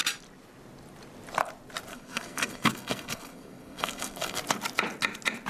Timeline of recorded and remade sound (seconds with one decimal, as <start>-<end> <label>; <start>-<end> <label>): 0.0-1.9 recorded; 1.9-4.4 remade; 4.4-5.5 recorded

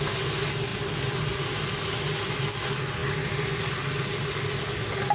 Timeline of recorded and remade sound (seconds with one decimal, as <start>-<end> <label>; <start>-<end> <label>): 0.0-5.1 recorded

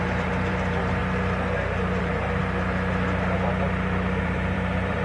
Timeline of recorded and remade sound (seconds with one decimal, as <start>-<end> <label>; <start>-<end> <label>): 0.0-1.0 remade; 1.0-2.0 recorded; 2.0-2.4 remade; 2.4-4.2 recorded; 4.2-5.0 remade